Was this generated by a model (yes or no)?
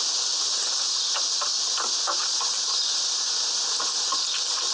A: no